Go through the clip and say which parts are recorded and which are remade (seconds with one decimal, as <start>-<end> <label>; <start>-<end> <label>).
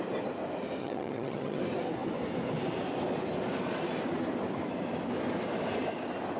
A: 0.0-0.8 recorded; 0.8-1.6 remade; 1.6-6.4 recorded